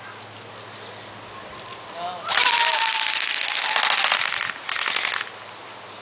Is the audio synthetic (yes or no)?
no